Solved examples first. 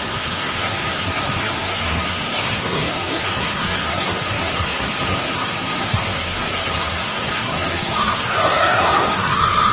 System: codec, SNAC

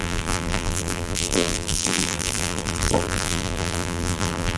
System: vocoder, BigVGAN v2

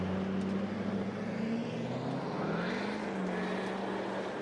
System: none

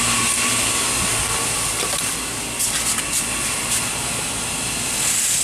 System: none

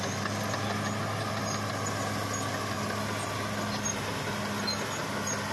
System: none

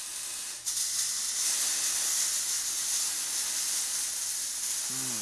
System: none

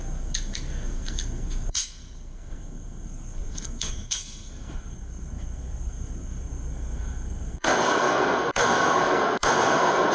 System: codec, SNAC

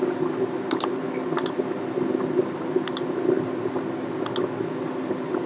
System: none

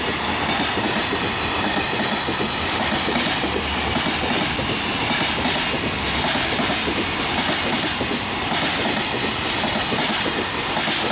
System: none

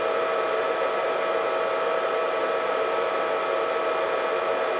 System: none